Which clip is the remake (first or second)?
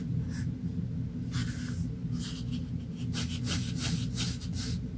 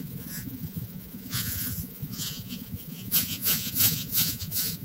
second